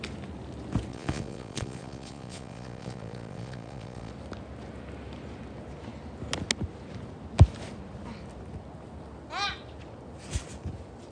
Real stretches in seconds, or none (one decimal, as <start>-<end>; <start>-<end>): 0.0-0.9; 4.1-11.1